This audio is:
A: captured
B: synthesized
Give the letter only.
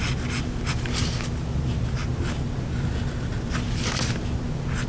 A